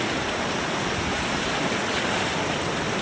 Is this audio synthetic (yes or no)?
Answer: no